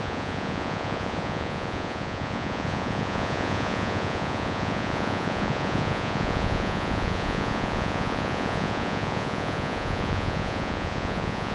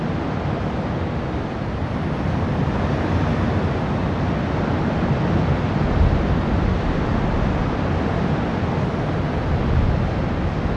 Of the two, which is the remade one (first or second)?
first